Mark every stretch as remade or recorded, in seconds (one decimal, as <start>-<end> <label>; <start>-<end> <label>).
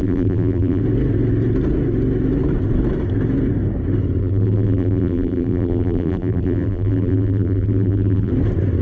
0.0-0.8 remade; 0.8-4.2 recorded; 4.2-8.3 remade; 8.3-8.8 recorded